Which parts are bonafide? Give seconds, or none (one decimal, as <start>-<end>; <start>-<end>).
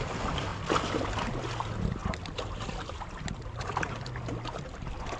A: 0.0-0.5; 1.3-2.0; 4.1-5.2